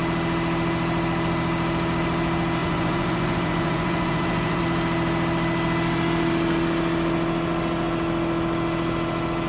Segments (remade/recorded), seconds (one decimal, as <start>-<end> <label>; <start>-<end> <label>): 0.0-2.6 recorded; 2.6-4.6 remade; 4.6-9.5 recorded